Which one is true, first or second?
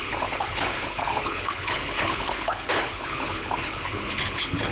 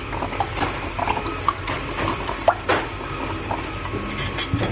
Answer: second